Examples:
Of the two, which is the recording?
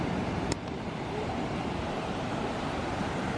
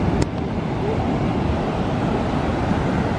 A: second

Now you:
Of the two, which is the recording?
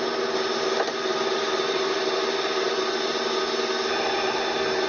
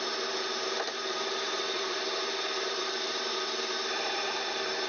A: first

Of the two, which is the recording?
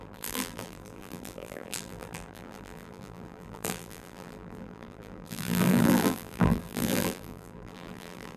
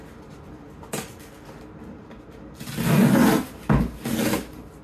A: second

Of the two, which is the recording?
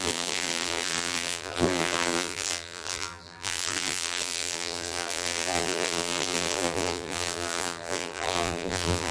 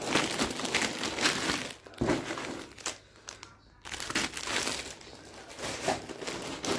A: second